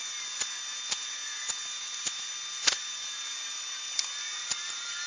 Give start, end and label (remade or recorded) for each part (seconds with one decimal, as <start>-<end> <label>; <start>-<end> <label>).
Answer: 0.0-5.1 recorded